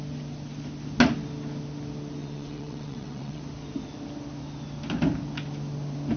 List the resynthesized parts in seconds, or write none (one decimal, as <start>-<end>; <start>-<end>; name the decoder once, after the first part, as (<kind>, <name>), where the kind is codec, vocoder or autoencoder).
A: 2.2-3.4 (vocoder, WaveNeXt)